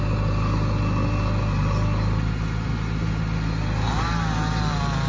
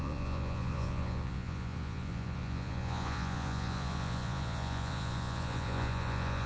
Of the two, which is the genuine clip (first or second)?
first